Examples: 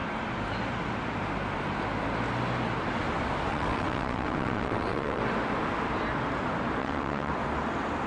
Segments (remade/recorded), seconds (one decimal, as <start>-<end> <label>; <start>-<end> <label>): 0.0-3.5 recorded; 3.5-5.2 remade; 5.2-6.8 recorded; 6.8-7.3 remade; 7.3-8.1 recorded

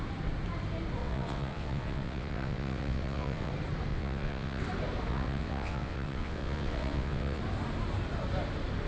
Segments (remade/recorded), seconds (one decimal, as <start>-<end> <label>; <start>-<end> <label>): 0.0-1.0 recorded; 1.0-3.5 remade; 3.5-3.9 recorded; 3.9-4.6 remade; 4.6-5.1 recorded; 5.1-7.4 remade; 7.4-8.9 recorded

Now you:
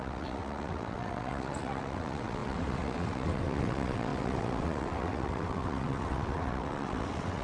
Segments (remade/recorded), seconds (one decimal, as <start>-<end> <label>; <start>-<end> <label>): 0.0-7.4 remade

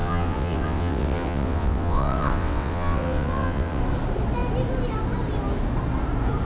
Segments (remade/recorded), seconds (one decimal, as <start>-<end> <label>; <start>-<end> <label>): 0.0-3.8 remade; 3.8-6.4 recorded